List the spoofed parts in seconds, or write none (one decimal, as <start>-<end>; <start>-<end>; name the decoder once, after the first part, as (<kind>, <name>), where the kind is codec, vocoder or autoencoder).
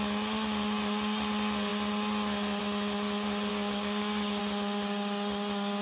3.5-4.4 (codec, DAC)